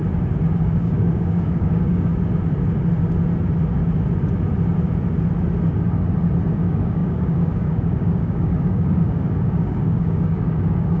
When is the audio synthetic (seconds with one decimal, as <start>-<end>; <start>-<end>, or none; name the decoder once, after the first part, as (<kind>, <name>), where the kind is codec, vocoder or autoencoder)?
0.6-2.1 (codec, DAC); 6.5-11.0